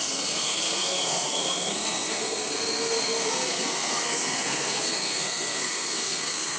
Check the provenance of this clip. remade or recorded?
remade